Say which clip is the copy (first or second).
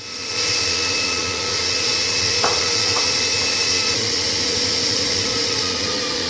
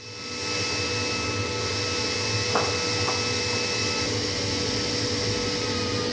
first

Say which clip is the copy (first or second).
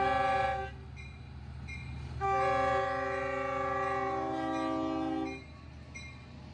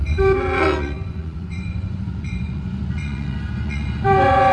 second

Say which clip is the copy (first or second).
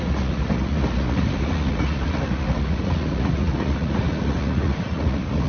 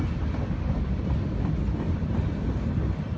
first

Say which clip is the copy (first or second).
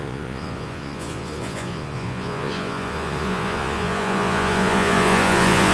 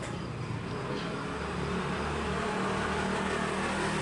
first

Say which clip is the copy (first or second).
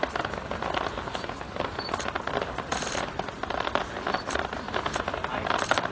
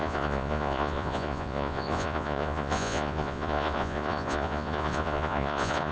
second